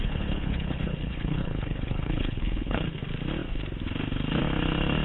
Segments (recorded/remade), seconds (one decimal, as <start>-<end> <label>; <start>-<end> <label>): 0.0-3.0 remade; 3.0-5.0 recorded